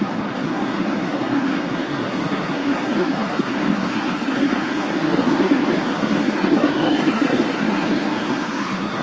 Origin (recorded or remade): remade